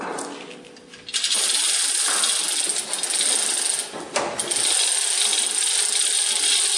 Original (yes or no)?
yes